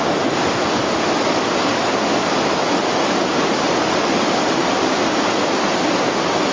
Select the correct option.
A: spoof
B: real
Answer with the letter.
B